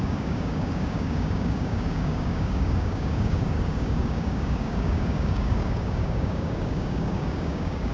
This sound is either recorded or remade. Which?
remade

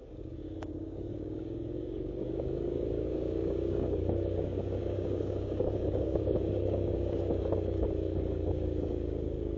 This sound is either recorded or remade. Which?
remade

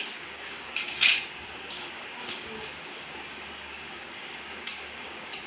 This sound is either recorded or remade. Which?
remade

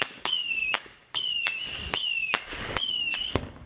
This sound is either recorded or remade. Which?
remade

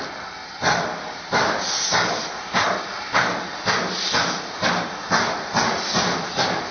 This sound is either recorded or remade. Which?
recorded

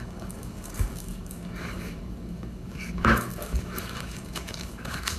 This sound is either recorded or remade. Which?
remade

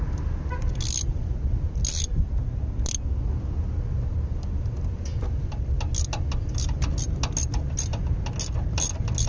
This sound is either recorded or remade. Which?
recorded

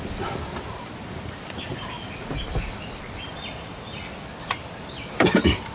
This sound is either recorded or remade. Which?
recorded